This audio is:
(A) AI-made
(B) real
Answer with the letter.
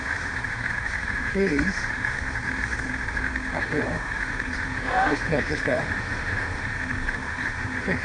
A